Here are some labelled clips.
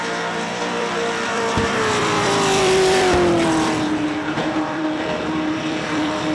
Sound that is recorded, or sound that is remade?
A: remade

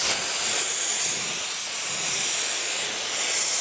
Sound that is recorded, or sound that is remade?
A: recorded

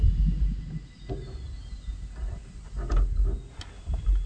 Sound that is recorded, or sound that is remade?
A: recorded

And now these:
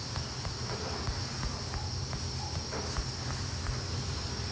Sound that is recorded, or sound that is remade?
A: recorded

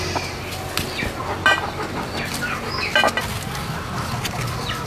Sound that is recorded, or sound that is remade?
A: recorded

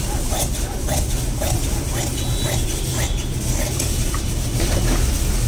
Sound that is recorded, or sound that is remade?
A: remade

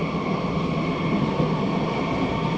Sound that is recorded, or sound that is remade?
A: recorded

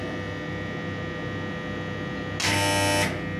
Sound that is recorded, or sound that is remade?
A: recorded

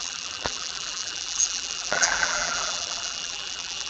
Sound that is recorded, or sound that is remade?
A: remade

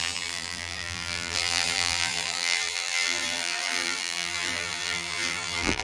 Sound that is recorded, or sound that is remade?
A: remade